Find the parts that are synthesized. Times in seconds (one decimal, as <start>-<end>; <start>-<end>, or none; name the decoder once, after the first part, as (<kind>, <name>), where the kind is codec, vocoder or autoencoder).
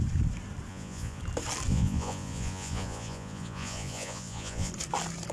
0.7-1.2 (vocoder, Vocos); 1.7-4.7